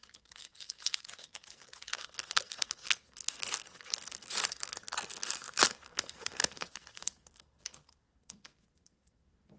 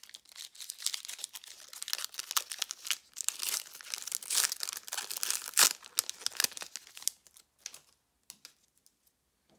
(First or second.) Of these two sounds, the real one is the second